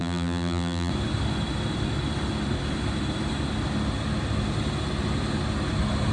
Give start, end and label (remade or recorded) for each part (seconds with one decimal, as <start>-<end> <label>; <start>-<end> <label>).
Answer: 0.0-0.9 remade; 0.9-6.1 recorded